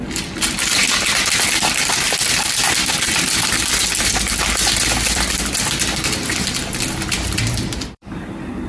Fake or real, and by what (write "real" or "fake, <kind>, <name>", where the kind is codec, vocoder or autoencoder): fake, vocoder, BigVGAN v2